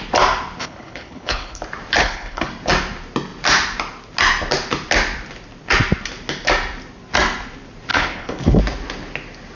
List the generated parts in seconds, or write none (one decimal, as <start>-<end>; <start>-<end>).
0.6-1.6; 2.0-2.5; 7.9-8.6